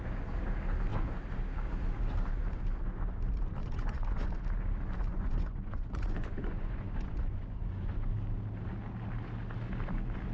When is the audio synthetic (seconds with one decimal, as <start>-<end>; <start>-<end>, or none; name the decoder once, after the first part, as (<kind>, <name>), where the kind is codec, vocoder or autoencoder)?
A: 3.6-4.3 (vocoder, Vocos); 5.1-8.1